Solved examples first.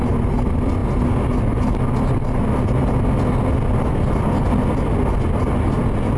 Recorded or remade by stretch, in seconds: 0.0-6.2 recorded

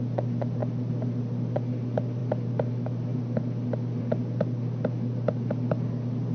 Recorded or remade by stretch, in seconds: 0.0-6.3 recorded

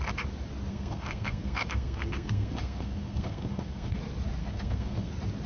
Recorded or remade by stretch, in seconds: 0.0-0.7 recorded; 0.7-4.0 remade; 4.0-4.4 recorded; 4.4-5.1 remade; 5.1-5.5 recorded

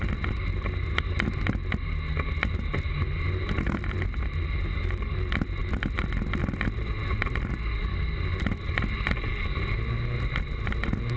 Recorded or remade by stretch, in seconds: 0.0-11.2 recorded

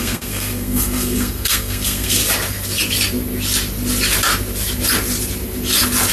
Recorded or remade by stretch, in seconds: 0.0-2.2 remade; 2.2-6.1 recorded